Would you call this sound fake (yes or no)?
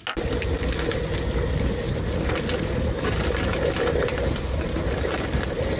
no